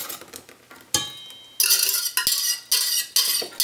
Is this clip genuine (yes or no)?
yes